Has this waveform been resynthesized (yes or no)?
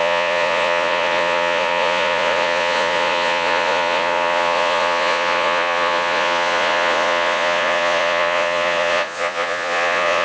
yes